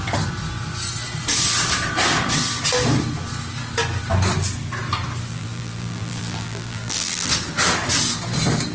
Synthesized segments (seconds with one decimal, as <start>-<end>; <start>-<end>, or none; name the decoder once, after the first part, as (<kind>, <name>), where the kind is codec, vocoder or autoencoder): 5.3-7.3 (vocoder, BigVGAN v2)

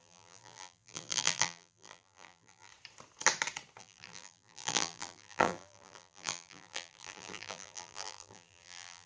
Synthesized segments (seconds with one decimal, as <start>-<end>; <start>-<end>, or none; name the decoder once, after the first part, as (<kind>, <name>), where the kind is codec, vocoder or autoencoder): 0.0-2.7 (vocoder, BigVGAN v2); 3.8-9.1

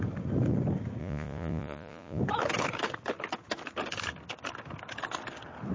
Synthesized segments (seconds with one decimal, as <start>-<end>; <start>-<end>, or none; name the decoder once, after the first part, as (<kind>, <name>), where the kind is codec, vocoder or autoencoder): 1.0-2.2 (vocoder, Vocos)

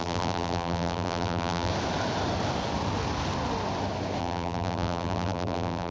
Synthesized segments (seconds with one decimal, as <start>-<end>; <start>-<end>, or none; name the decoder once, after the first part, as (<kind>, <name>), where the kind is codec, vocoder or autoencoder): 0.0-1.7 (vocoder, BigVGAN v2); 4.2-5.9

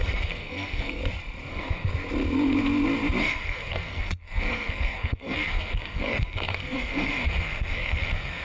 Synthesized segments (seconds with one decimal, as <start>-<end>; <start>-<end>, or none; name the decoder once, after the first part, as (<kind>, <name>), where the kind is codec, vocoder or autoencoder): 0.0-1.0 (codec, SNAC); 1.5-1.9; 3.2-8.4

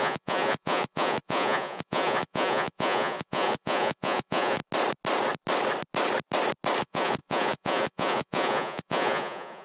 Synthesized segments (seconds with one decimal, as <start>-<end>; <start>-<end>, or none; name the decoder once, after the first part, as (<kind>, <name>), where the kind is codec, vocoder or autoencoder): 0.0-4.6 (vocoder, Vocos); 6.8-9.6

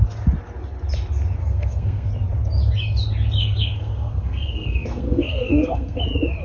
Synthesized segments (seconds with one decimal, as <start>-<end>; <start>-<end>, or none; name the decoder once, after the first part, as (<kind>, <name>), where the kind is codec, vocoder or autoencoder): 1.4-2.1 (codec, SNAC); 3.4-6.0

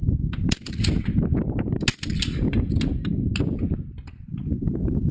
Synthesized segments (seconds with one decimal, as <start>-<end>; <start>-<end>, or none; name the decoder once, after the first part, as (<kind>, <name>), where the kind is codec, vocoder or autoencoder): 1.3-1.9 (vocoder, BigVGAN v2)